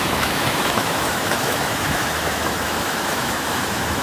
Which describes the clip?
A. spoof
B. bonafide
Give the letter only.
A